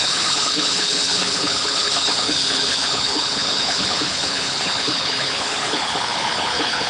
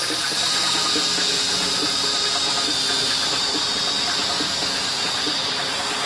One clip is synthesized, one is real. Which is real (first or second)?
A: second